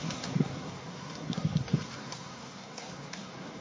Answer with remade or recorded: remade